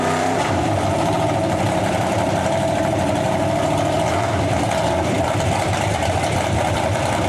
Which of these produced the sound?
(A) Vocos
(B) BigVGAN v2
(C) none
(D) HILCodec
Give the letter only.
B